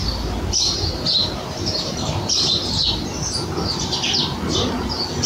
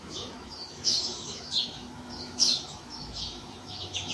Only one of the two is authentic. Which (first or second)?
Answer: first